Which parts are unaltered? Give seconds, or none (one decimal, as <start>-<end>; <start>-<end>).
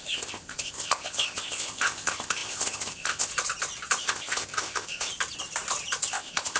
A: 3.3-4.0; 5.1-6.1